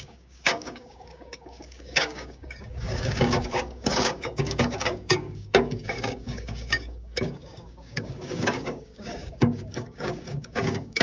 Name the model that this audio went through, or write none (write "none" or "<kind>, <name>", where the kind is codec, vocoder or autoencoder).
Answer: codec, DAC